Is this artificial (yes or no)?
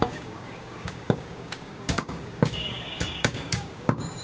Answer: yes